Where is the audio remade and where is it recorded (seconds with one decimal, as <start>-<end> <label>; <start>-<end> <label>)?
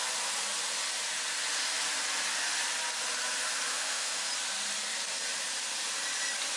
0.0-3.7 recorded; 3.7-4.3 remade; 4.3-6.6 recorded